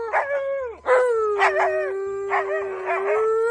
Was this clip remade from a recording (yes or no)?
no